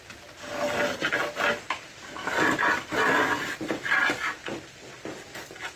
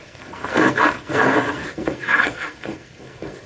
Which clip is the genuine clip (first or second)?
first